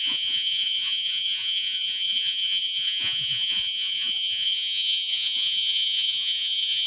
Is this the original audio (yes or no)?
no